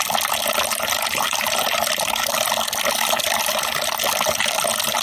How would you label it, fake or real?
real